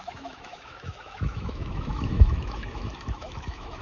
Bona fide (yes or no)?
no